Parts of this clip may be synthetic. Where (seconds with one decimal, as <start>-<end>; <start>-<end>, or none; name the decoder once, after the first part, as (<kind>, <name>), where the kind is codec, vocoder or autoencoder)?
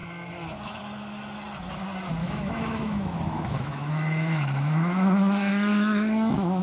0.0-0.8 (autoencoder, DAC-VAE); 2.2-6.6